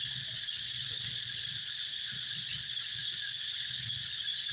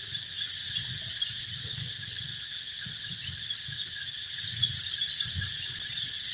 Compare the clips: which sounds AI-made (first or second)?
first